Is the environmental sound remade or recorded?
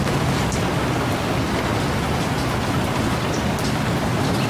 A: recorded